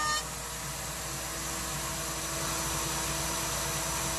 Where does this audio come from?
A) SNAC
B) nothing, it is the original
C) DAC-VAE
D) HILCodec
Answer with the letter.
B